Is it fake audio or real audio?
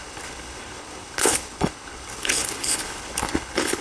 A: fake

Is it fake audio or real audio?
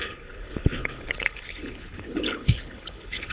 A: fake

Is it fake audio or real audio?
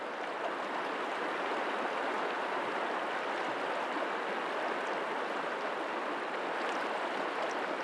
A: real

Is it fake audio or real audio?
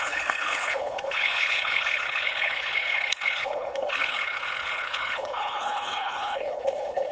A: fake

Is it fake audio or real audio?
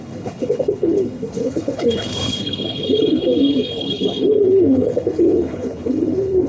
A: fake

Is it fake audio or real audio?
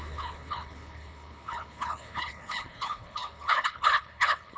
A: fake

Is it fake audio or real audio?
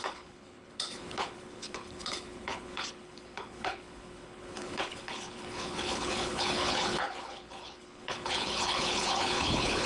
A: fake